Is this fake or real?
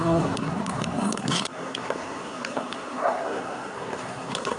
fake